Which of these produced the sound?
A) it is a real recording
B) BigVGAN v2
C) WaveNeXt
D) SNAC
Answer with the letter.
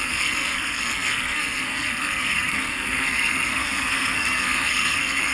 D